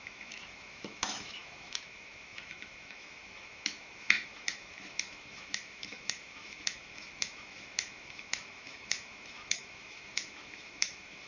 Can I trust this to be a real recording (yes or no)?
no